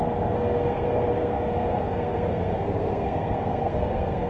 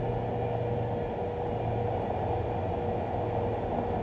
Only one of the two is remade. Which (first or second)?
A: first